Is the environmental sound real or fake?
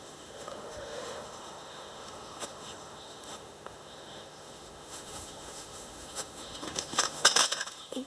fake